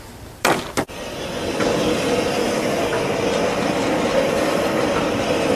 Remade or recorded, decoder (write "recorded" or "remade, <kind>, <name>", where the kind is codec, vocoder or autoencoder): recorded